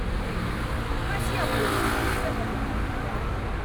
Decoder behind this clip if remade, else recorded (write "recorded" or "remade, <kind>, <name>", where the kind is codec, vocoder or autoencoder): recorded